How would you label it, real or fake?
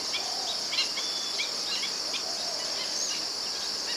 real